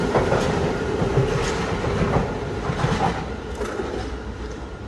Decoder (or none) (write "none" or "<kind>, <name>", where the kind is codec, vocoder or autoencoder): none